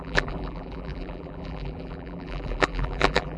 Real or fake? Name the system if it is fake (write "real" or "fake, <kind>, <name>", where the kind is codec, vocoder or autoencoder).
fake, vocoder, BigVGAN v2